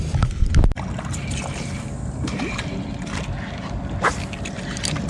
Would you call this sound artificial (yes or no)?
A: no